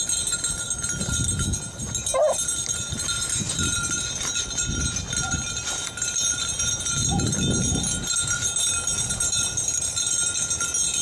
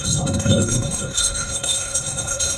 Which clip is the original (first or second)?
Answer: first